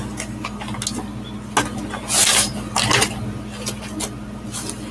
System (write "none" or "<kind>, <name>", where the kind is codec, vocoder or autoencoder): none